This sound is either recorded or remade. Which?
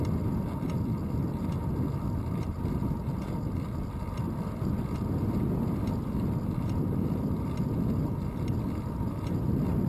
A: recorded